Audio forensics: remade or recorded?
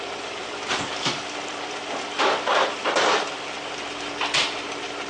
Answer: remade